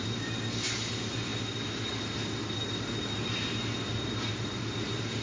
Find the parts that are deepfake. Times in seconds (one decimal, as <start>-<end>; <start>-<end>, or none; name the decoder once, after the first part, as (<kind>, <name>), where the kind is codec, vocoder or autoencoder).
none